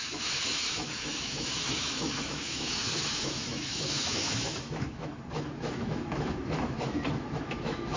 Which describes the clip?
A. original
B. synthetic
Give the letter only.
B